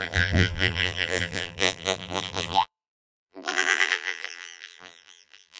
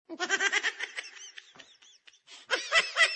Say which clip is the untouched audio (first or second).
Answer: second